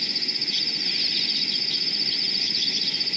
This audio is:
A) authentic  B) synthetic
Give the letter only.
B